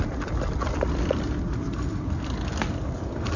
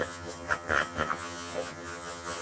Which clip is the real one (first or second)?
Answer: first